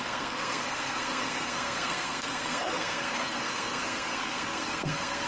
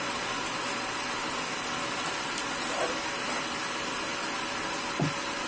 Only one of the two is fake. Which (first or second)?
first